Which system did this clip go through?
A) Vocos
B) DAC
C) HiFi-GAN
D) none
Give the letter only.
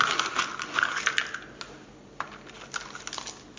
D